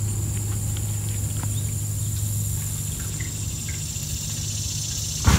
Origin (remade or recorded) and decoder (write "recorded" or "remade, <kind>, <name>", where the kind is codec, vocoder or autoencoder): recorded